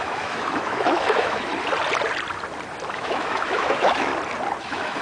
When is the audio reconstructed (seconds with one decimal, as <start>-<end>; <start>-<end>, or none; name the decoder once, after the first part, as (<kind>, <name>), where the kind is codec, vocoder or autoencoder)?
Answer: 0.0-1.5 (autoencoder, DAC-VAE); 2.9-4.1; 4.6-5.0